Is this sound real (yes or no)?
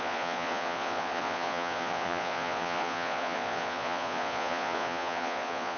no